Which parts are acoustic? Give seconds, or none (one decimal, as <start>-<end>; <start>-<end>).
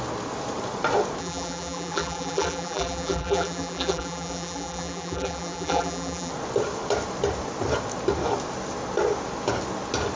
0.0-1.2; 6.3-10.2